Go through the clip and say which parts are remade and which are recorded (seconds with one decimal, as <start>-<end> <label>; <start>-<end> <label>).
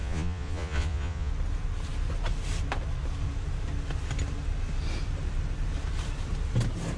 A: 0.0-1.3 remade; 1.3-7.0 recorded